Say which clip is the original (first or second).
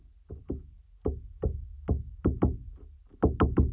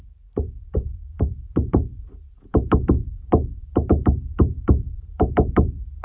first